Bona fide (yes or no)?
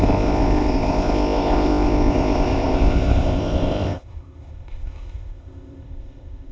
no